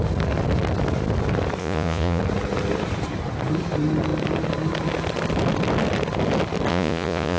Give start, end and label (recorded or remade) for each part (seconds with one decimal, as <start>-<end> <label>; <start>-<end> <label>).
0.0-1.6 recorded; 1.6-2.2 remade; 2.2-6.7 recorded; 6.7-7.4 remade